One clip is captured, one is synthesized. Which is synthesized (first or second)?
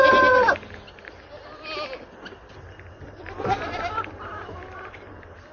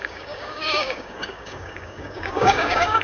second